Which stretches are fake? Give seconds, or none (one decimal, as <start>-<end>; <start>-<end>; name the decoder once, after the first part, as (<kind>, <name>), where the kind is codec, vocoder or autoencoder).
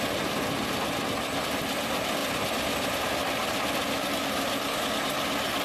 none